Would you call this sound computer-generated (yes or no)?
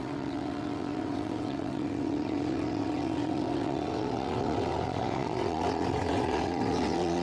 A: yes